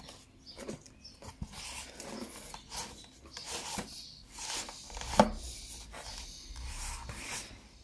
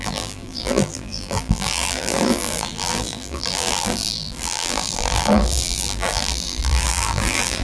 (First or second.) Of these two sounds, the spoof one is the second